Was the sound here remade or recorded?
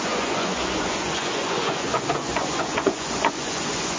remade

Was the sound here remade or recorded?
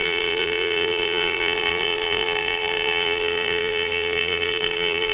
remade